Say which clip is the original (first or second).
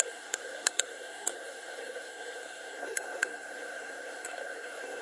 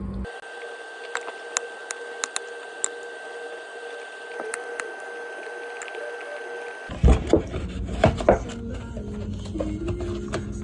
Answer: second